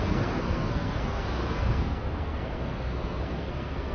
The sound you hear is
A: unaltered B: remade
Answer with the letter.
B